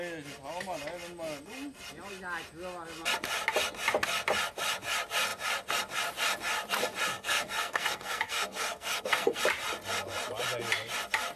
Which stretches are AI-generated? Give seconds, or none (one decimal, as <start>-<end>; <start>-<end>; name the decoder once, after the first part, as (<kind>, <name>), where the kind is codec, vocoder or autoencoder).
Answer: 7.1-9.4 (codec, SNAC)